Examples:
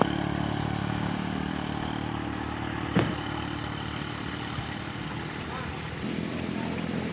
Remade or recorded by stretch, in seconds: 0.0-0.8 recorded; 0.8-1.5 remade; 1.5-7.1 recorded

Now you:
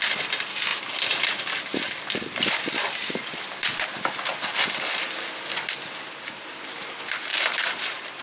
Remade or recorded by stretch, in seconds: 0.0-8.2 recorded

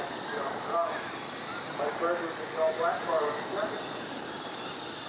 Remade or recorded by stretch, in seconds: 0.0-5.1 recorded

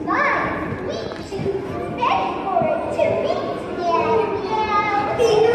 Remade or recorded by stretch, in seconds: 0.0-5.5 recorded

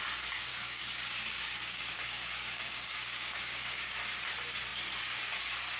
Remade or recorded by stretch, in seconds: 0.0-0.5 recorded; 0.5-4.0 remade; 4.0-5.8 recorded

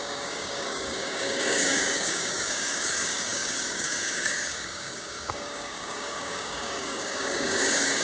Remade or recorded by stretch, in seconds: 0.0-8.0 remade

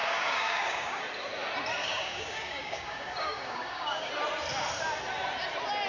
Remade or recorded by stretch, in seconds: 0.0-1.0 remade; 1.0-1.8 recorded; 1.8-4.1 remade; 4.1-5.9 recorded